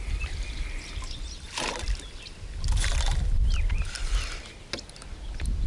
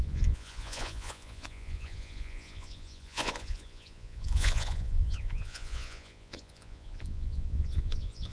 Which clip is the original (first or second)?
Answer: first